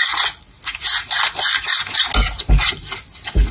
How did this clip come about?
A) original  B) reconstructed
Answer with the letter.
A